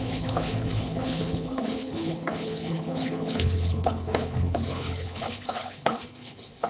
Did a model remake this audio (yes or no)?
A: yes